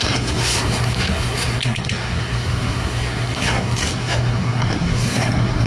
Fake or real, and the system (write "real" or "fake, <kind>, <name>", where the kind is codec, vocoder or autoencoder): fake, codec, SNAC